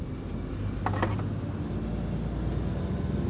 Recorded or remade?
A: recorded